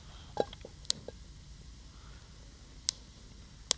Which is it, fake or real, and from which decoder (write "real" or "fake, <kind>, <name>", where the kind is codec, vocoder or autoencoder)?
real